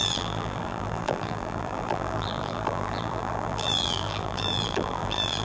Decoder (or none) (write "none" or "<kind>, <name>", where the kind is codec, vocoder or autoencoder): vocoder, BigVGAN v2